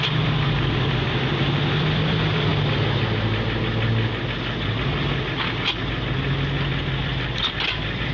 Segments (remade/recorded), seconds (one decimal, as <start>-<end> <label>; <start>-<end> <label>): 0.0-2.5 remade; 2.5-6.7 recorded; 6.7-8.1 remade